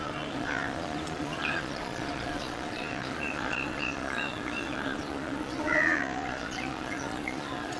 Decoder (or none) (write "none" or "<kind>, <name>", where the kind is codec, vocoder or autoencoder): vocoder, Vocos